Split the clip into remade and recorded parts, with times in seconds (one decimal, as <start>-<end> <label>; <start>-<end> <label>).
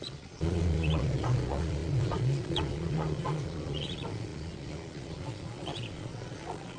0.0-6.8 remade